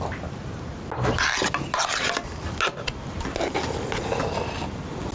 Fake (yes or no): no